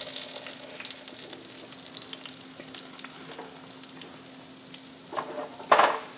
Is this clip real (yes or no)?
yes